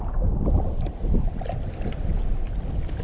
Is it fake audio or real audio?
real